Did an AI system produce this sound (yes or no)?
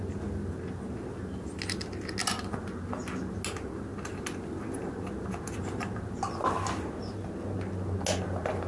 no